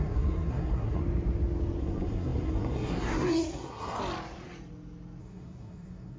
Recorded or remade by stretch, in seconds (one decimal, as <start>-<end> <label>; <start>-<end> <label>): 0.0-1.0 remade; 1.0-1.8 recorded; 1.8-4.0 remade; 4.0-5.2 recorded; 5.2-6.2 remade